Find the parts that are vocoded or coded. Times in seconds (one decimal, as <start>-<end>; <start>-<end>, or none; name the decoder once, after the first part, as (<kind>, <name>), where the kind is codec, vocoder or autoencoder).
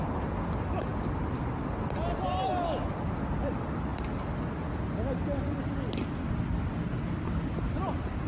none